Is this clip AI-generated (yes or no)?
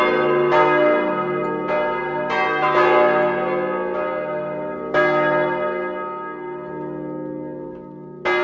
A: no